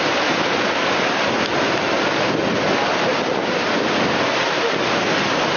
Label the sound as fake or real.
real